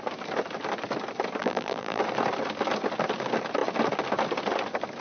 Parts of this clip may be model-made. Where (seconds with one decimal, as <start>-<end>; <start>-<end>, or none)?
1.4-2.0